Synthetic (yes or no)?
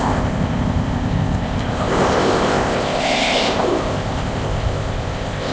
yes